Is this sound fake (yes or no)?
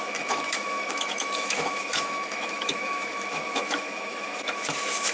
yes